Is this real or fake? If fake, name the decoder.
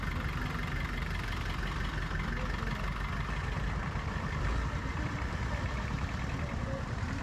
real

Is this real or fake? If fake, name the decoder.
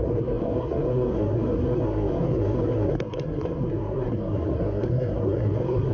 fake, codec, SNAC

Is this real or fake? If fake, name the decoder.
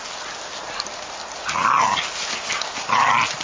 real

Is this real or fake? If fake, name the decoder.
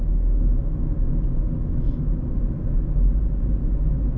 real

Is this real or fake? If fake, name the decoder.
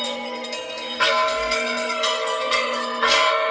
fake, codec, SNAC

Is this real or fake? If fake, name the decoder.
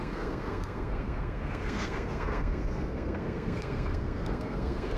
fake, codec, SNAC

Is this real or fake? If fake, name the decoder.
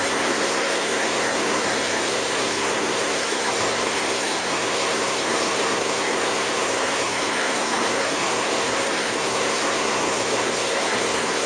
fake, codec, SNAC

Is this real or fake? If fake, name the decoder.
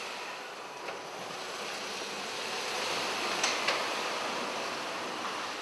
real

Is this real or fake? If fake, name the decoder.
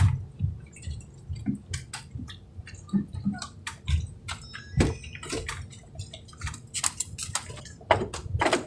real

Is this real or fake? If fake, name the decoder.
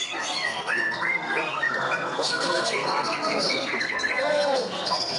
fake, codec, SNAC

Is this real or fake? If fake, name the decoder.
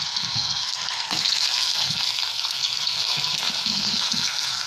fake, codec, SNAC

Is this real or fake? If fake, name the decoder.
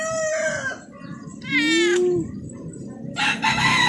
real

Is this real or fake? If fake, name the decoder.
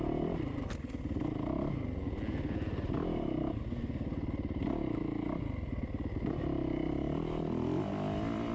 real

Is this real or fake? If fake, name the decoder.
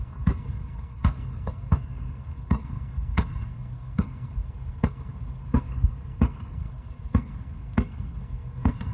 fake, codec, SNAC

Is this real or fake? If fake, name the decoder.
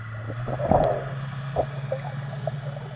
real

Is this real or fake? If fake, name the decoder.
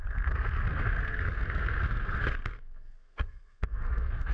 fake, codec, SNAC